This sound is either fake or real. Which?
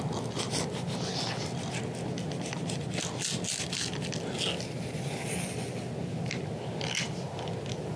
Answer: real